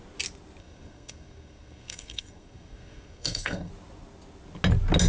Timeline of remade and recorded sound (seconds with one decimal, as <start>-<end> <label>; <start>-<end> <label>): 0.0-0.6 recorded; 0.6-3.7 remade; 3.7-5.1 recorded